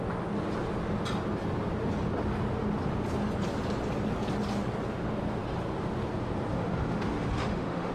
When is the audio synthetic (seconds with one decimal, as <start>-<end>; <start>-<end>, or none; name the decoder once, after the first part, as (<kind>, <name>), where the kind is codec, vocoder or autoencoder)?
6.5-7.9 (autoencoder, DAC-VAE)

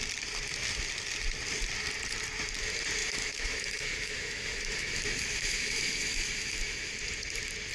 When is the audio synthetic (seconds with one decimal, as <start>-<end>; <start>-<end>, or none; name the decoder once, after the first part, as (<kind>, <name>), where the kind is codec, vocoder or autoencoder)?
3.0-7.0 (autoencoder, DAC-VAE)

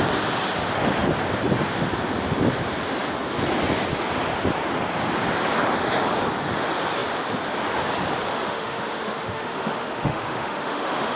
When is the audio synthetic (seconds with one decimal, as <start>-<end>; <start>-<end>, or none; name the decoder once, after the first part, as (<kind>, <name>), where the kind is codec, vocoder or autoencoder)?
8.3-11.2 (autoencoder, DAC-VAE)

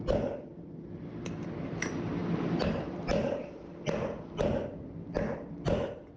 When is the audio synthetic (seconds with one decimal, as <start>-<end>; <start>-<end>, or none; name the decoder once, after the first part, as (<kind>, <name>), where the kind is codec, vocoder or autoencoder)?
none

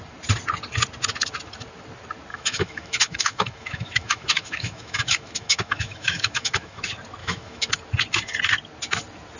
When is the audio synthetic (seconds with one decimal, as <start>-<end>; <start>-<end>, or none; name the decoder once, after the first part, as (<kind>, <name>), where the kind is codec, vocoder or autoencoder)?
2.3-6.8 (autoencoder, DAC-VAE); 7.2-7.7